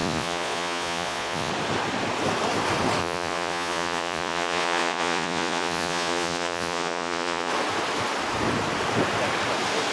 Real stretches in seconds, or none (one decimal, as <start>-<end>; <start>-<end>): 1.5-3.0; 7.5-9.9